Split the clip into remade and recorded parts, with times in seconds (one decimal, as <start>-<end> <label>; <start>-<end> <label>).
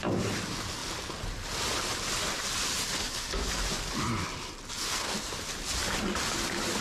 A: 0.0-3.0 recorded; 3.0-3.6 remade; 3.6-4.7 recorded; 4.7-5.3 remade; 5.3-6.8 recorded